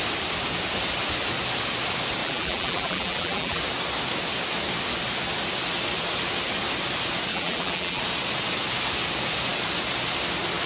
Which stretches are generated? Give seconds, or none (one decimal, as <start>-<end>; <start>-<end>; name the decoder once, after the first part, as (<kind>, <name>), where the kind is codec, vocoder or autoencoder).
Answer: 2.2-3.6 (vocoder, BigVGAN v2); 7.3-8.0